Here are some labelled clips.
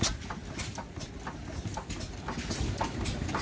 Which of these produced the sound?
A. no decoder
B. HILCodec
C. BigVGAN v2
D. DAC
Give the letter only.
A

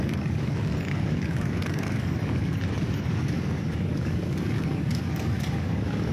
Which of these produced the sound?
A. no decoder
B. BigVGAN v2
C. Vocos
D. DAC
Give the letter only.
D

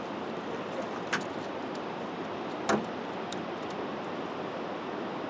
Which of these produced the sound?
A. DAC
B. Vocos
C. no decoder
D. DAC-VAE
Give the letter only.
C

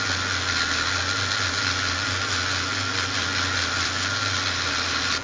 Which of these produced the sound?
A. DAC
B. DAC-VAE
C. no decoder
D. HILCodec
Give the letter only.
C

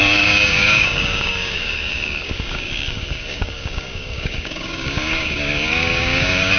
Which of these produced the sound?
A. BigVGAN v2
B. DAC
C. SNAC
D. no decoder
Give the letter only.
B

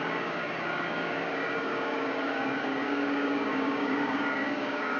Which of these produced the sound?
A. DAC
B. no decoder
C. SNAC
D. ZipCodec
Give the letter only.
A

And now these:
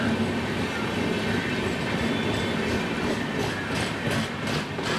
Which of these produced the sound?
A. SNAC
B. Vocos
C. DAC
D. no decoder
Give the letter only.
D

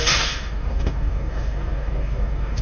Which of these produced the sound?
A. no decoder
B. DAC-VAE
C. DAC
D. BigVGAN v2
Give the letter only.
C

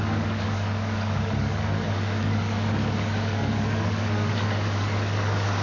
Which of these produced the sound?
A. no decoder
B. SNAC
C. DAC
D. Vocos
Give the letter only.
C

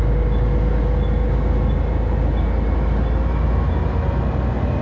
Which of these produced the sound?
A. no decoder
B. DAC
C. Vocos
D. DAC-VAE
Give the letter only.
A